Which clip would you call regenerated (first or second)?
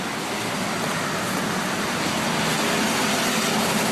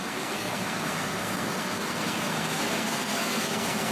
second